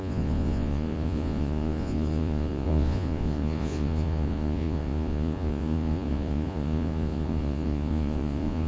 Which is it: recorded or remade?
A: remade